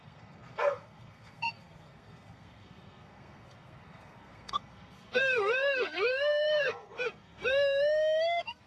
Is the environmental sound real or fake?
fake